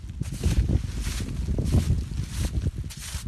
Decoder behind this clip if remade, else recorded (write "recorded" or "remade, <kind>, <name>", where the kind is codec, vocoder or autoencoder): recorded